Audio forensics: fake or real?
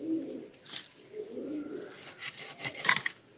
real